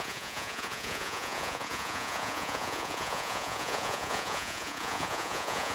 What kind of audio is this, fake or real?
fake